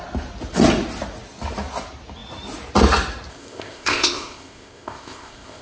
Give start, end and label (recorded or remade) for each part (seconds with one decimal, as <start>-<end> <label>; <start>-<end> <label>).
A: 0.0-3.3 recorded; 3.3-5.6 remade